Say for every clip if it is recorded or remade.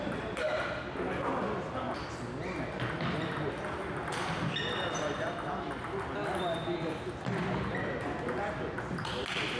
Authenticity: recorded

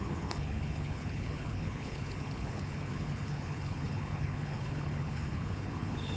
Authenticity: remade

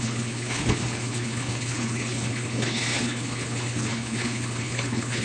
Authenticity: remade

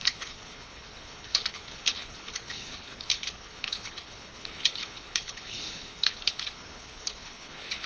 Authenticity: remade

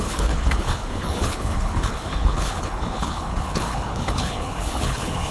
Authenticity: remade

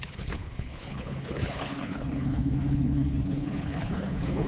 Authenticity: remade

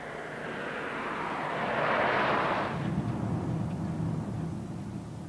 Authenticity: recorded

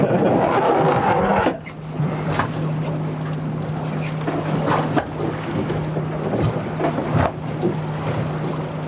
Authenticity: recorded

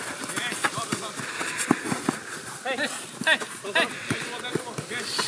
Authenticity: recorded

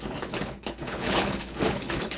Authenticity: remade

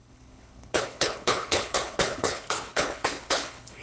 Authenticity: remade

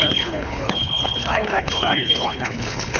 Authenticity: remade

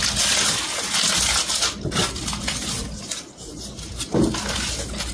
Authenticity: recorded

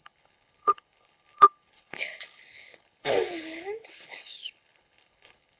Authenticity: remade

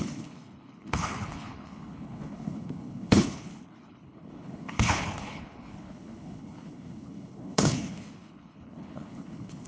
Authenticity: remade